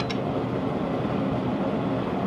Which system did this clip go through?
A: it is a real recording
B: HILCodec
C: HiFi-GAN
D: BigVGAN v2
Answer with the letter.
A